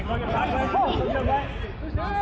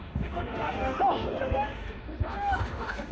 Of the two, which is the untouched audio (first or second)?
first